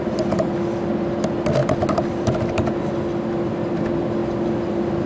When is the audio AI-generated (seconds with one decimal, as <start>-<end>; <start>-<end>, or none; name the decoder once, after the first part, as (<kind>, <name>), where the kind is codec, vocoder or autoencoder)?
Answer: none